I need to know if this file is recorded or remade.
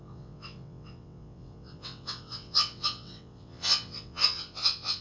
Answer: remade